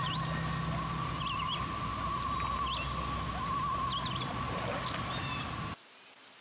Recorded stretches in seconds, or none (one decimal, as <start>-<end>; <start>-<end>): 0.0-6.4